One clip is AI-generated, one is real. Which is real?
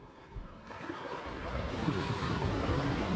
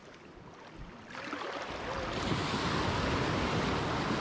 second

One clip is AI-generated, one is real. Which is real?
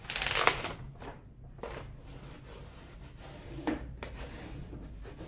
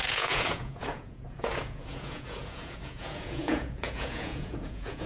first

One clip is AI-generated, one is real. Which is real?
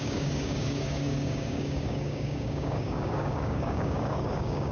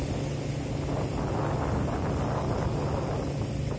second